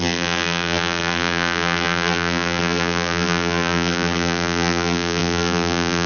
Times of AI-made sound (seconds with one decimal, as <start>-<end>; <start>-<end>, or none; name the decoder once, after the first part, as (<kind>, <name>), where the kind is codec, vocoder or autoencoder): 0.0-6.1 (vocoder, BigVGAN v2)